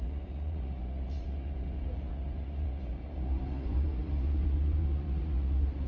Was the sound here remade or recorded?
remade